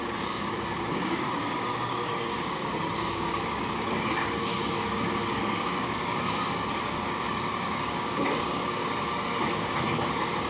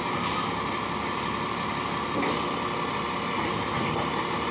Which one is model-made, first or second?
first